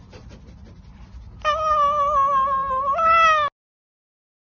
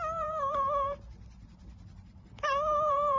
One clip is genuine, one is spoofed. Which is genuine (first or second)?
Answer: first